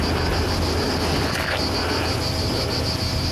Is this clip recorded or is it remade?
recorded